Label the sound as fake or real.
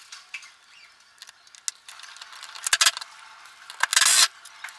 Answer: real